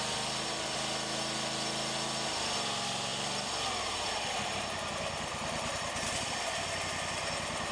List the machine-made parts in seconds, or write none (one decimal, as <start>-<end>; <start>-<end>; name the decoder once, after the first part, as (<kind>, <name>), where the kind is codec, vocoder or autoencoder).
none